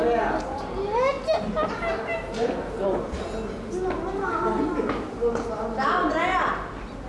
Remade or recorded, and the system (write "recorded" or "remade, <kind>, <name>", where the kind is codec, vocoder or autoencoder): recorded